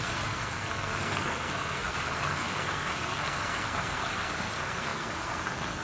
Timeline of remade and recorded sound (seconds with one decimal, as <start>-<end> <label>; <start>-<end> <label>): 0.0-5.8 remade